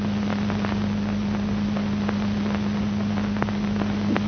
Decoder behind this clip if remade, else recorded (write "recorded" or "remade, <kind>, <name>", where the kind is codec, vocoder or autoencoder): recorded